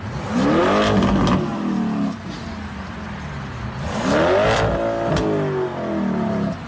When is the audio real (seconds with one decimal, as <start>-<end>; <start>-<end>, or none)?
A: 0.0-6.7